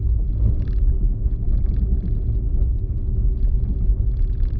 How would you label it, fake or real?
real